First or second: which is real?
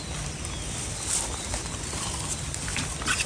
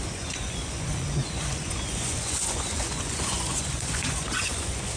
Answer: first